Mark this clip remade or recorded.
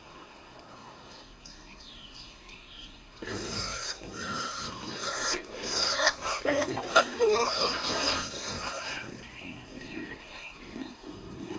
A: remade